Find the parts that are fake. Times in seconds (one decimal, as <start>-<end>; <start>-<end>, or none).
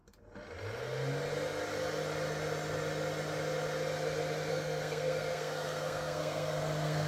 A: 4.5-7.1